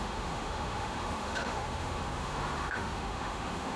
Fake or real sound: fake